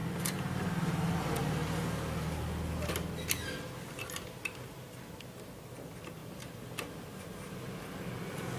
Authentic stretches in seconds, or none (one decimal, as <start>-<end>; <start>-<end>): 0.0-8.6